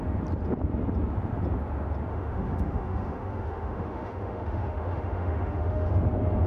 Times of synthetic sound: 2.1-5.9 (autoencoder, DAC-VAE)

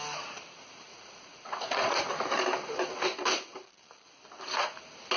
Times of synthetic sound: 0.9-2.1 (vocoder, Vocos)

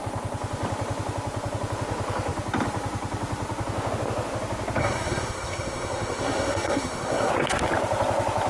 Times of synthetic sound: 4.8-7.3 (codec, SNAC)

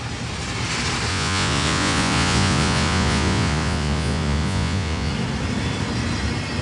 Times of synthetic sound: 1.1-5.1 (vocoder, Vocos)